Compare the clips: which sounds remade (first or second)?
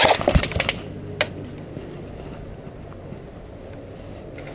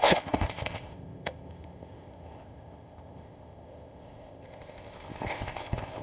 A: second